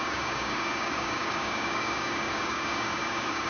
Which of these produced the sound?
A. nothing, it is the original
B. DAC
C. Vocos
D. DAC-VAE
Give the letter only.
B